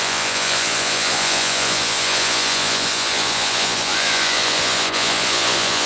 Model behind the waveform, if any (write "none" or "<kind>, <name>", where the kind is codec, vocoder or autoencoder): vocoder, Vocos